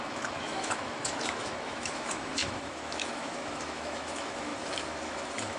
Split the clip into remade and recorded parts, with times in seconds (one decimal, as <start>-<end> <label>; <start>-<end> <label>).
0.0-5.6 remade